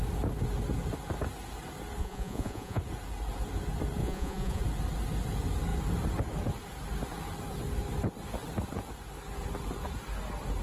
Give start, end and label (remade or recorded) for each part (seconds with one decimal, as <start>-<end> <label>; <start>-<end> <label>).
0.0-2.0 recorded; 2.0-2.8 remade; 2.8-4.0 recorded; 4.0-4.6 remade; 4.6-10.6 recorded

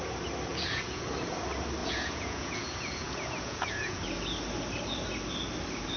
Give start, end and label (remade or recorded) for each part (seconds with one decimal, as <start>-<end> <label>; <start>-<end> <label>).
0.0-0.5 recorded; 0.5-1.0 remade; 1.0-1.8 recorded; 1.8-4.0 remade; 4.0-6.0 recorded

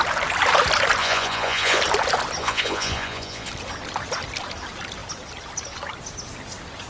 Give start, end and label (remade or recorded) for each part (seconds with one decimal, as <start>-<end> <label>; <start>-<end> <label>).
0.0-1.0 recorded; 1.0-1.8 remade; 1.8-2.4 recorded; 2.4-3.5 remade; 3.5-6.9 recorded